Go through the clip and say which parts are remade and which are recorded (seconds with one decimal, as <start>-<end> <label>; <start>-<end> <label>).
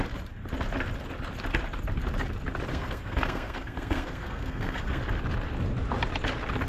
0.0-2.7 recorded; 2.7-5.0 remade; 5.0-6.7 recorded